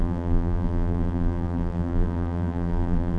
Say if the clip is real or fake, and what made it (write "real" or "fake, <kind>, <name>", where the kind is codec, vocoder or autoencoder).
fake, vocoder, BigVGAN v2